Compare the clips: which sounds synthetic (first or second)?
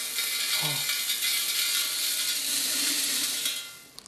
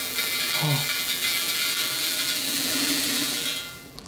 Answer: second